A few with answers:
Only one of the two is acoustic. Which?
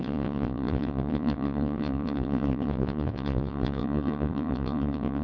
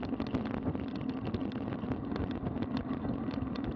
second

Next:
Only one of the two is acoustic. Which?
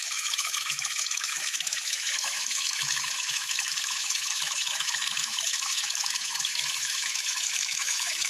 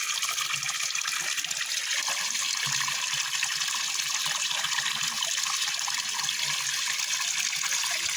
second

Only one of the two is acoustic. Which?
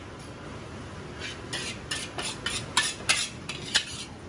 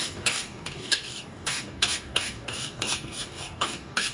first